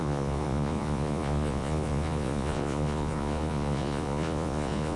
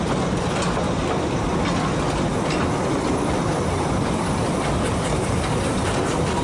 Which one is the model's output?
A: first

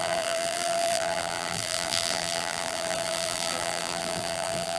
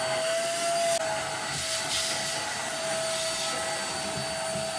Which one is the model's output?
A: first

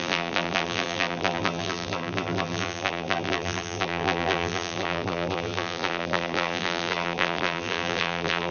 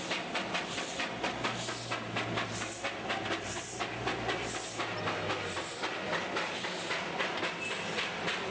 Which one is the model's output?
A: first